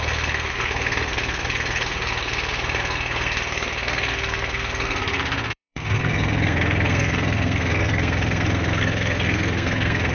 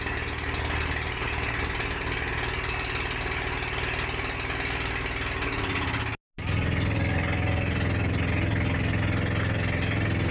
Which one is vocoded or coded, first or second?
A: first